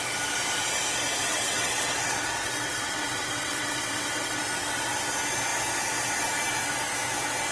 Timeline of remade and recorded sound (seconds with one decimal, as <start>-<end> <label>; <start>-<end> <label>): 0.0-1.2 recorded; 1.2-4.4 remade; 4.4-7.5 recorded